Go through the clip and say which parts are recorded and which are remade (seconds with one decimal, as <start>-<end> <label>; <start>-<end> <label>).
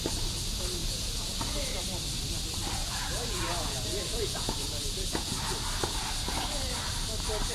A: 0.0-0.8 recorded; 0.8-1.8 remade; 1.8-2.8 recorded; 2.8-5.4 remade; 5.4-7.5 recorded